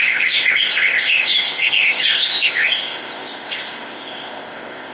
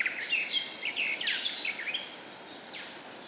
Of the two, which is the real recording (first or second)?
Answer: second